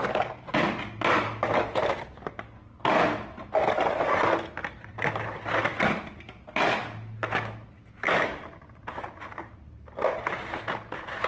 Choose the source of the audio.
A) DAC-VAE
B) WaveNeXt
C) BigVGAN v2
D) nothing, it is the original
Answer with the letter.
D